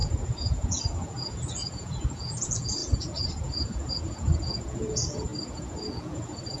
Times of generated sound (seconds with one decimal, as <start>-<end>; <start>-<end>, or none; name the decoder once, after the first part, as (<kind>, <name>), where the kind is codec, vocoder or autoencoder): 0.0-6.6 (vocoder, Vocos)